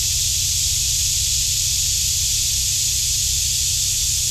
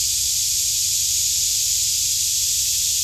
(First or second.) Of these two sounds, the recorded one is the second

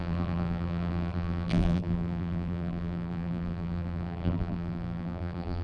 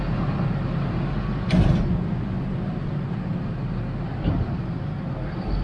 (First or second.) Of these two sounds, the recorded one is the second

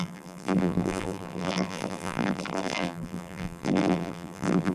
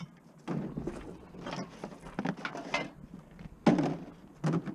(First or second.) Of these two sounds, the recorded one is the second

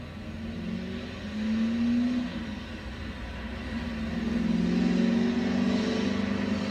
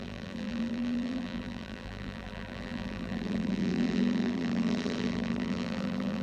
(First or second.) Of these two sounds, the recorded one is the first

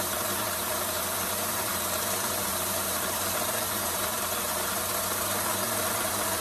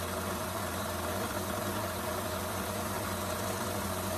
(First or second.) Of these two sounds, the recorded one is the second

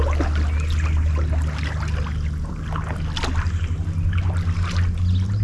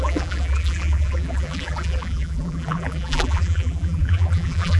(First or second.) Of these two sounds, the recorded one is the first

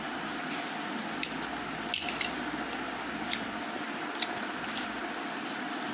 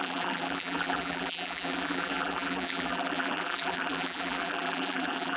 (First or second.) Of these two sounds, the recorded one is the first